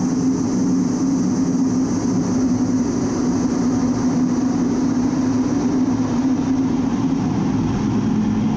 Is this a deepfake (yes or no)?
no